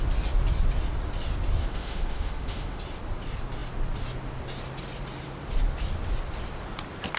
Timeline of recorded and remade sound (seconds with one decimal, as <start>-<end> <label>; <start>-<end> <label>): 0.0-1.6 recorded; 1.6-2.8 remade; 2.8-7.2 recorded